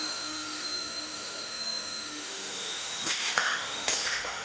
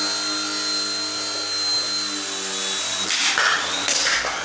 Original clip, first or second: second